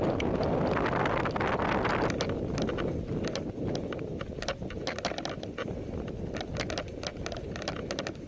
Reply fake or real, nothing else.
real